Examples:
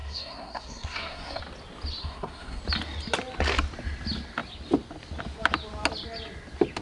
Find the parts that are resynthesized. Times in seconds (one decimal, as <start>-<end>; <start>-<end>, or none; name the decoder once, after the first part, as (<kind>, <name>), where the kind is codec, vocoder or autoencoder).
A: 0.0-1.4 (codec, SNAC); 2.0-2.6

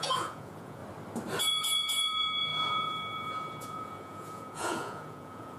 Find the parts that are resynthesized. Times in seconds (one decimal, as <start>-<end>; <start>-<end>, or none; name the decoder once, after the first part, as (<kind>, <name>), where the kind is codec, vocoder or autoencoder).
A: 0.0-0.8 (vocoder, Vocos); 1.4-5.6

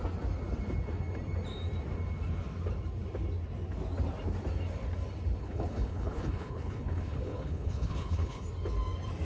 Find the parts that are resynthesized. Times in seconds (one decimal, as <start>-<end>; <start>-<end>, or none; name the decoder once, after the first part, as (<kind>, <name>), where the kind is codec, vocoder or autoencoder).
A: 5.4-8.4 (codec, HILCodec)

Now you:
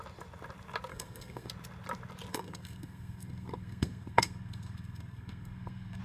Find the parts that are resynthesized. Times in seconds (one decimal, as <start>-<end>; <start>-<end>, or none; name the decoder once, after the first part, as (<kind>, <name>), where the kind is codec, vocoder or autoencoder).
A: 0.9-1.5 (codec, SNAC); 2.3-6.0

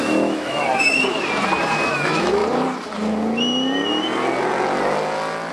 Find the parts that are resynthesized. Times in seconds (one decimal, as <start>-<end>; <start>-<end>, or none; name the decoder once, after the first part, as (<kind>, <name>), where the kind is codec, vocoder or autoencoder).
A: 0.0-0.7 (autoencoder, DAC-VAE); 1.9-2.4

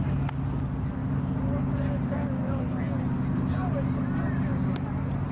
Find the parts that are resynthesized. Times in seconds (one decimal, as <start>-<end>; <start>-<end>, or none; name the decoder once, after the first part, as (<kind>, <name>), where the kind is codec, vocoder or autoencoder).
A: none

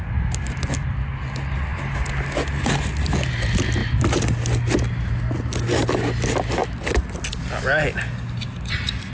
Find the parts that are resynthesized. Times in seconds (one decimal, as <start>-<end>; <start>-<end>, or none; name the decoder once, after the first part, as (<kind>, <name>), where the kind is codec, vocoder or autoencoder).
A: none

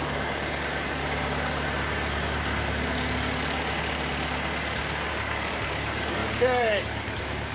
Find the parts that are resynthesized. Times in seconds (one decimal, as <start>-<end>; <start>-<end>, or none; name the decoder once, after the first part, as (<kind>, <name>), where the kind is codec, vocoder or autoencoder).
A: 0.0-1.0 (codec, DAC); 5.1-7.5